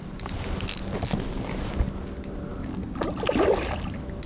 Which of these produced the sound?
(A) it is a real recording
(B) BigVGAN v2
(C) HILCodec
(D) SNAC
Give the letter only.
A